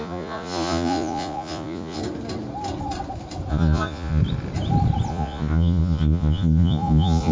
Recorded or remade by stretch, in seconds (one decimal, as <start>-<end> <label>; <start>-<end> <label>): 0.0-2.0 remade; 2.0-3.5 recorded; 3.5-4.2 remade; 4.2-5.1 recorded; 5.1-7.3 remade